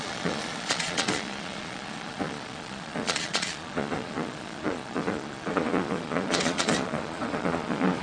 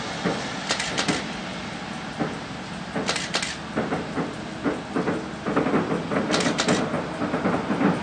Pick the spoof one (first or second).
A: first